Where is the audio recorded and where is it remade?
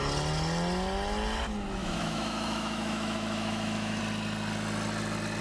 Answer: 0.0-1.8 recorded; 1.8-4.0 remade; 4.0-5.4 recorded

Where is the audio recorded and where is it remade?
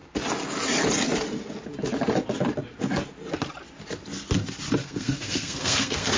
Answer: 0.0-4.8 recorded; 4.8-6.2 remade